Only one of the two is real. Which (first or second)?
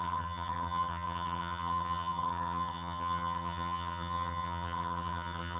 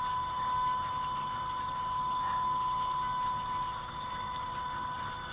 second